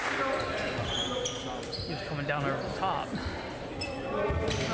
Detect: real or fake real